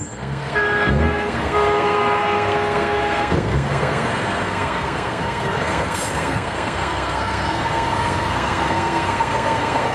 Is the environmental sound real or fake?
fake